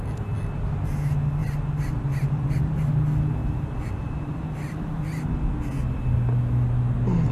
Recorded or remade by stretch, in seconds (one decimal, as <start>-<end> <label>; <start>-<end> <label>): 0.0-1.4 recorded; 1.4-2.9 remade; 2.9-3.4 recorded; 3.4-5.3 remade; 5.3-7.3 recorded